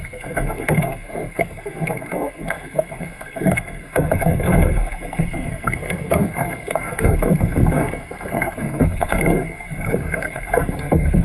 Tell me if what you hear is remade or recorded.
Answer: remade